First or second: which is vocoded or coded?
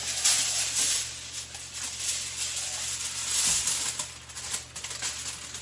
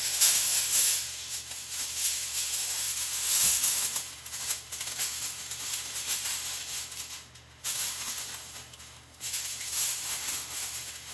second